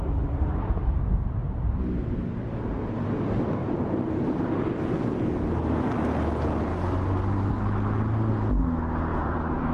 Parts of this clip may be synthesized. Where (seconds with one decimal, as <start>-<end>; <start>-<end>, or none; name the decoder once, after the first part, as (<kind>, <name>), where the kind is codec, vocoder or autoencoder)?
3.6-4.1 (vocoder, Vocos); 9.1-9.7